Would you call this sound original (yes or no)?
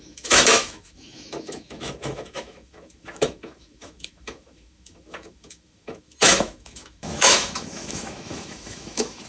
no